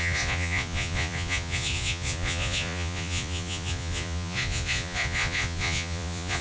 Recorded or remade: remade